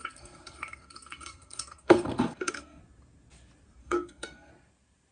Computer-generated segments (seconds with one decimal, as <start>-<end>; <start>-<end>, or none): 0.0-2.8; 3.8-4.5

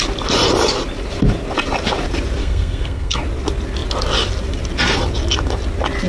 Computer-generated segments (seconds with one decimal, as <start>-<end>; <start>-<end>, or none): 2.4-3.2

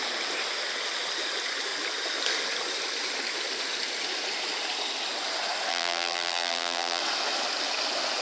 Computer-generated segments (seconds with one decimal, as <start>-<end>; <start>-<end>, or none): 5.7-7.0

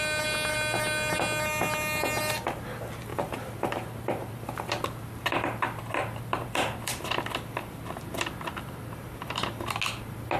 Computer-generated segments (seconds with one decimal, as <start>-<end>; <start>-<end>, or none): 3.1-4.8; 6.0-9.8